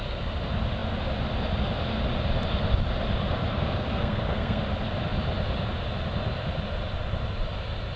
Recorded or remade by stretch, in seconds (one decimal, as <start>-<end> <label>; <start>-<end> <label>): 0.0-3.5 recorded; 3.5-4.6 remade; 4.6-8.0 recorded

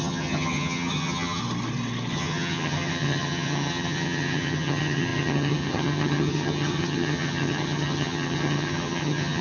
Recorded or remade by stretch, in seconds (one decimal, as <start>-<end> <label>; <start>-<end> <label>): 0.0-1.4 remade; 1.4-2.1 recorded; 2.1-9.4 remade

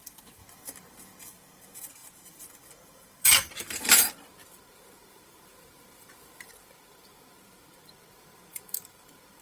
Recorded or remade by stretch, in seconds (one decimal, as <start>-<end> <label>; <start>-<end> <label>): 0.0-0.4 remade; 0.4-1.3 recorded; 1.3-9.4 remade

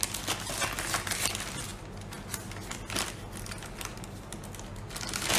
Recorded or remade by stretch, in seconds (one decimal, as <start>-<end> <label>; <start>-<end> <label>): 0.0-5.4 recorded

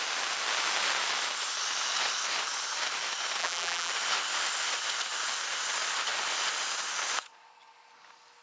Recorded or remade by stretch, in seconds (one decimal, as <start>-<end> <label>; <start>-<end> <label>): 0.0-3.4 recorded; 3.4-3.9 remade; 3.9-8.4 recorded

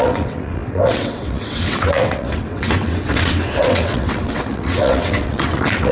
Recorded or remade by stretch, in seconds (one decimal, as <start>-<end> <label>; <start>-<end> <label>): 0.0-5.9 remade